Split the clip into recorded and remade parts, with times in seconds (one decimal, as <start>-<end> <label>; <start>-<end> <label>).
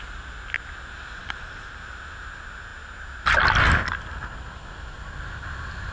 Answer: 0.0-1.2 recorded; 1.2-1.8 remade; 1.8-5.9 recorded